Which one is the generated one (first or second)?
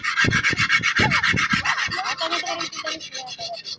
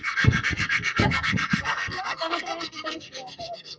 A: second